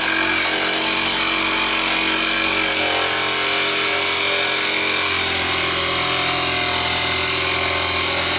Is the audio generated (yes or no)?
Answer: no